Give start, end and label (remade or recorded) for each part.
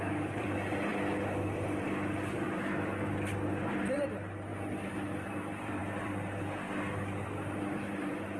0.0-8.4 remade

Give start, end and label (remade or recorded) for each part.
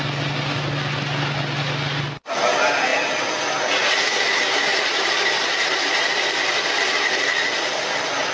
0.0-2.9 recorded; 2.9-3.5 remade; 3.5-4.7 recorded; 4.7-8.3 remade